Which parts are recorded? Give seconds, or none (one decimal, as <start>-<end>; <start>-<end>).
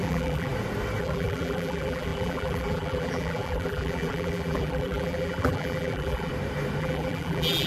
0.5-1.0; 6.3-6.8